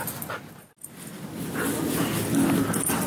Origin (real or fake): real